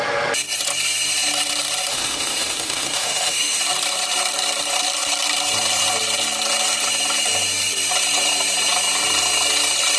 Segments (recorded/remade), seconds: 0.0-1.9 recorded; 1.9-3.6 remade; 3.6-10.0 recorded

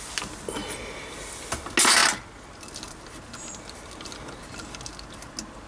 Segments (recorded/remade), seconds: 0.0-5.7 recorded

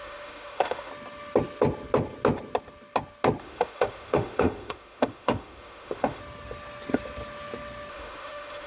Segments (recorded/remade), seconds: 0.0-0.9 remade; 0.9-3.4 recorded; 3.4-6.2 remade; 6.2-7.9 recorded; 7.9-8.7 remade

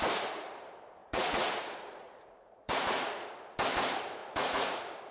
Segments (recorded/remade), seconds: 0.0-1.0 recorded; 1.0-3.3 remade; 3.3-4.2 recorded; 4.2-5.1 remade